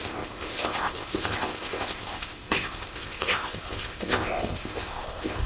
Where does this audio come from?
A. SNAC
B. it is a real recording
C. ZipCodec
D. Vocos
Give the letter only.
C